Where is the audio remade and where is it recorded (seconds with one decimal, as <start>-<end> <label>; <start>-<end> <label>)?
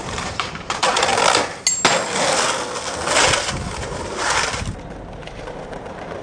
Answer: 0.0-1.1 remade; 1.1-4.8 recorded; 4.8-6.2 remade